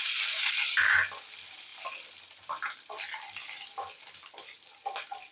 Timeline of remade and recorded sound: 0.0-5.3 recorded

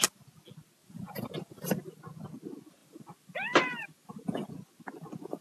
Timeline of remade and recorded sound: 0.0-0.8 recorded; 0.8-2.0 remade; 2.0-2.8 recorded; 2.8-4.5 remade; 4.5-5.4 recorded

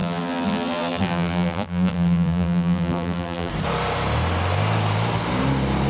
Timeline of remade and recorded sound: 0.0-3.5 remade; 3.5-5.9 recorded